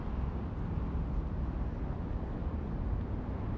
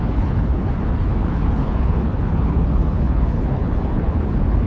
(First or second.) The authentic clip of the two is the first